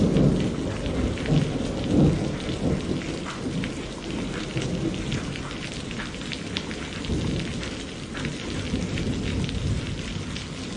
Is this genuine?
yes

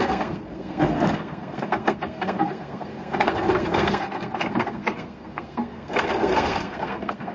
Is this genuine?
no